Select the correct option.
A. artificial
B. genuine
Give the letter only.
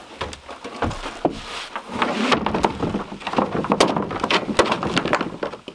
B